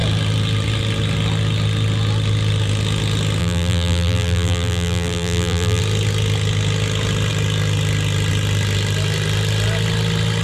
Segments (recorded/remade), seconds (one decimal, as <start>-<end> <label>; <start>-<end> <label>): 0.0-3.4 recorded; 3.4-5.8 remade; 5.8-10.4 recorded